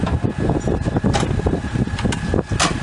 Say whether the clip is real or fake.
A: real